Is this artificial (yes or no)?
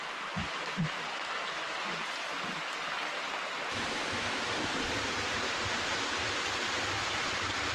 no